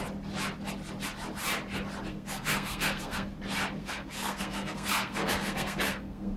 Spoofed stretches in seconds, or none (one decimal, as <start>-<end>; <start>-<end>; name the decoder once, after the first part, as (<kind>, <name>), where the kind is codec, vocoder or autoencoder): 2.1-3.3 (codec, SNAC); 3.8-6.4